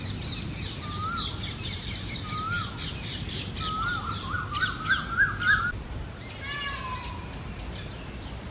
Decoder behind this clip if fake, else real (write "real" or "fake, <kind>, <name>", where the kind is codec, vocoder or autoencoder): real